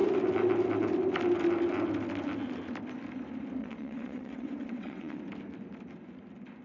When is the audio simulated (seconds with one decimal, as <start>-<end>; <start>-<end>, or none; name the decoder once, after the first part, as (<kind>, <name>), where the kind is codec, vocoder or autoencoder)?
3.6-5.2 (vocoder, WaveNeXt)